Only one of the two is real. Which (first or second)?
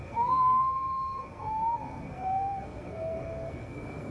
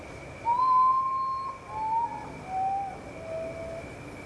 second